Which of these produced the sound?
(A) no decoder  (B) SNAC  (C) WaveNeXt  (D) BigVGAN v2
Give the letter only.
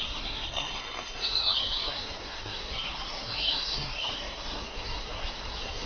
B